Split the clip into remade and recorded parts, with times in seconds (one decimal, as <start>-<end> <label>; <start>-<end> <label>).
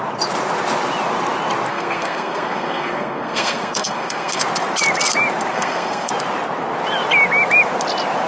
0.0-1.7 recorded; 1.7-4.4 remade; 4.4-5.5 recorded; 5.5-6.1 remade; 6.1-8.3 recorded